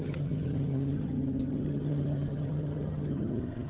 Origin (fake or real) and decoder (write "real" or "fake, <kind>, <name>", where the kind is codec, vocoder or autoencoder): fake, vocoder, HiFi-GAN